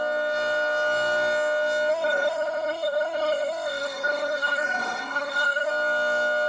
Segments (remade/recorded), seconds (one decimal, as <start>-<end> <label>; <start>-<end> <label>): 0.0-1.9 recorded; 1.9-5.7 remade; 5.7-6.5 recorded